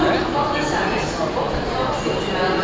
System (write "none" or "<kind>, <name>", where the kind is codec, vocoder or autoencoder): none